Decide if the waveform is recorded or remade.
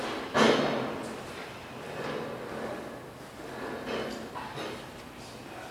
recorded